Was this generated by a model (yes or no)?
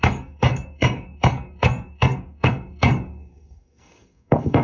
yes